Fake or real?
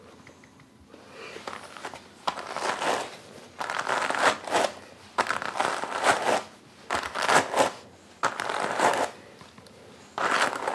real